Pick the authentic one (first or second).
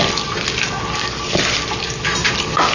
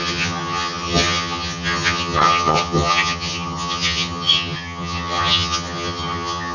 first